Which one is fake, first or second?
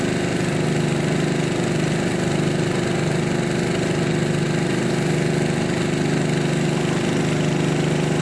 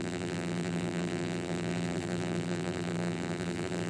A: second